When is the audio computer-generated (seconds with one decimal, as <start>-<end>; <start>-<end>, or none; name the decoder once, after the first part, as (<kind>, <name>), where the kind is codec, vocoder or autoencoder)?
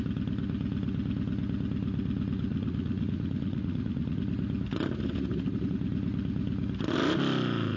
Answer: 2.5-4.2 (vocoder, Vocos)